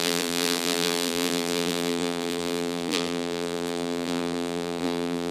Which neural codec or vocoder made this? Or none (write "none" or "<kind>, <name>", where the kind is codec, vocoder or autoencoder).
vocoder, BigVGAN v2